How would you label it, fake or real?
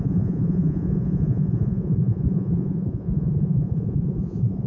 fake